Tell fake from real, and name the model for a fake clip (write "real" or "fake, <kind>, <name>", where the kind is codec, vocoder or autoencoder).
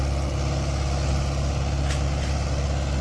real